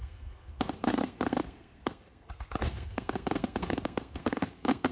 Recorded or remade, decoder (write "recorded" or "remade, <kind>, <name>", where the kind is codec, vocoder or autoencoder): remade, codec, SNAC